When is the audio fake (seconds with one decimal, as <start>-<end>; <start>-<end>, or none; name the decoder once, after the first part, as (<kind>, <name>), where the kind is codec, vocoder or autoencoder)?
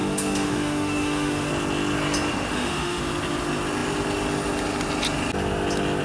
0.0-1.5 (autoencoder, DAC-VAE); 2.5-3.0